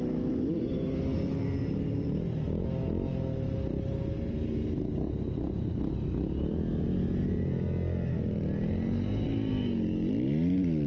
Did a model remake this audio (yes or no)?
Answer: no